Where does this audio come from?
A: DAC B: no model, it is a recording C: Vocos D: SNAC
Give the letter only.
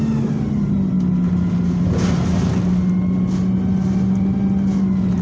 B